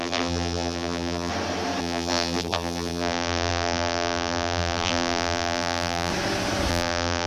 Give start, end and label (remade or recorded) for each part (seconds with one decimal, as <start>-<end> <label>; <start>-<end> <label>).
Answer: 0.0-1.3 remade; 1.3-1.8 recorded; 1.8-6.1 remade; 6.1-6.7 recorded; 6.7-7.3 remade